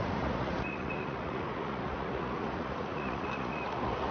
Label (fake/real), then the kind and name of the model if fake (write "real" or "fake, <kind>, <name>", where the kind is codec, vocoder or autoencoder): fake, vocoder, Vocos